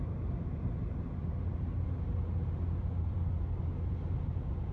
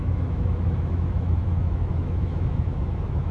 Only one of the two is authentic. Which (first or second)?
first